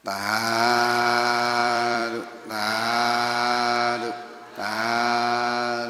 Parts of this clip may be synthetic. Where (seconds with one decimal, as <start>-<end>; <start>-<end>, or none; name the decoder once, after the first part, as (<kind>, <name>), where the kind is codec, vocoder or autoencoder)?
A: 1.6-2.5 (vocoder, BigVGAN v2)